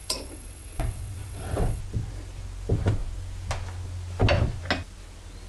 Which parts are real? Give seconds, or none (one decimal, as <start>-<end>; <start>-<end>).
1.8-5.5